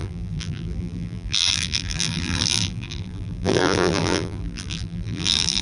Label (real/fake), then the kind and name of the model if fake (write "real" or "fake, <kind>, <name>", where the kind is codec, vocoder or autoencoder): fake, vocoder, BigVGAN v2